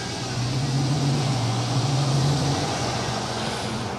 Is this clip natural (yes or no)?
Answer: no